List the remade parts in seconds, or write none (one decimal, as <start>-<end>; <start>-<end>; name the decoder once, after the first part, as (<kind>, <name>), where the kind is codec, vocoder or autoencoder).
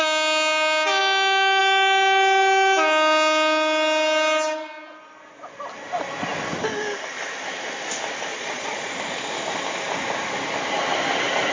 8.3-8.9 (vocoder, Vocos)